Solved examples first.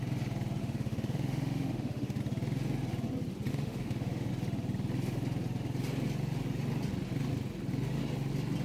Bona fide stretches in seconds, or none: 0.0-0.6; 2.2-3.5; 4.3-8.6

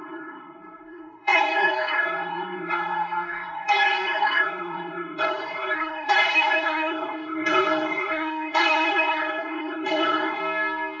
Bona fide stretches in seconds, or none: 10.4-11.0

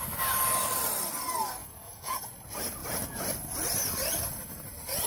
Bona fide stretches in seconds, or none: 0.0-1.6; 2.3-5.1

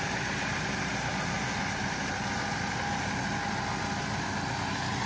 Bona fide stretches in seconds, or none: 1.6-5.1

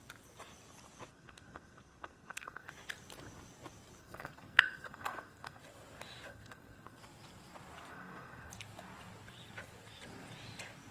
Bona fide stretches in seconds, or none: 0.0-1.1; 2.7-4.0; 5.6-6.3; 7.0-7.9; 8.5-10.9